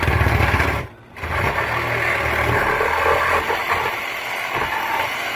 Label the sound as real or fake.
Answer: real